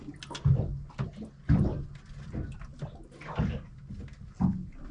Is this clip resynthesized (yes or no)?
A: no